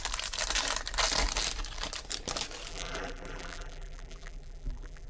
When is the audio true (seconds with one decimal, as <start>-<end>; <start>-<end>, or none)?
0.0-2.7